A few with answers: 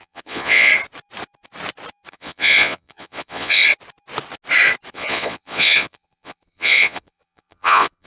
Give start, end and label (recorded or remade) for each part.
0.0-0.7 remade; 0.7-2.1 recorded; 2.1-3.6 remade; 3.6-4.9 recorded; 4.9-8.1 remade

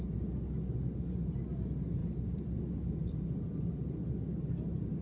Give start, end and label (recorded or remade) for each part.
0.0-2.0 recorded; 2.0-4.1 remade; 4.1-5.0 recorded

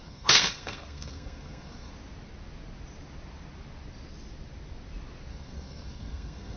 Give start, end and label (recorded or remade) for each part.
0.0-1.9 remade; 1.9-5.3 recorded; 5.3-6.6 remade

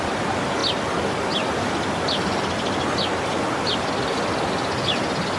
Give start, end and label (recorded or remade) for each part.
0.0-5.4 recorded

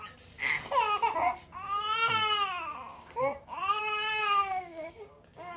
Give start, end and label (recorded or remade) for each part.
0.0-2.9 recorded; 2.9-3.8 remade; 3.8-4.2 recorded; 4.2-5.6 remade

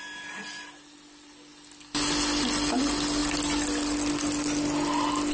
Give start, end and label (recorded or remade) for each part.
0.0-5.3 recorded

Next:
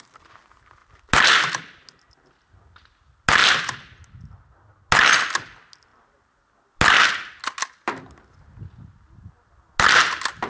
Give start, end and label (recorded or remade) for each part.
0.0-10.5 recorded